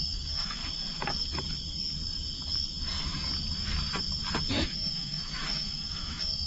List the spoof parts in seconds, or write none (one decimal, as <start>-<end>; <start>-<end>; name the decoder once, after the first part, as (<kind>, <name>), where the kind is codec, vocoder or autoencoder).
0.0-0.6 (autoencoder, DAC-VAE); 4.5-6.5